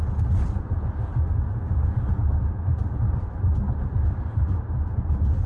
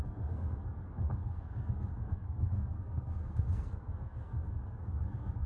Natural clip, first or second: first